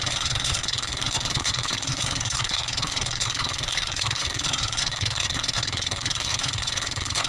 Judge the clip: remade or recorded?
remade